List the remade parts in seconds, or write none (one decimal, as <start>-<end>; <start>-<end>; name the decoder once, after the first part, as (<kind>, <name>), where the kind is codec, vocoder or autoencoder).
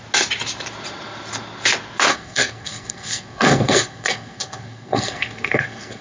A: 2.1-6.0 (codec, SNAC)